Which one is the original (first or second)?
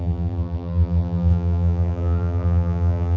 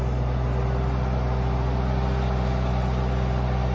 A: second